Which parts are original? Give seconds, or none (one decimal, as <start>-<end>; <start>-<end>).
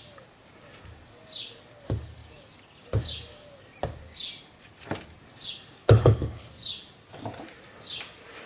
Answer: 0.0-5.8; 6.5-8.5